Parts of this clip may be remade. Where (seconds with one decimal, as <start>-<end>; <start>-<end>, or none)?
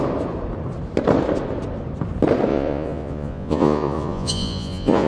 2.5-5.1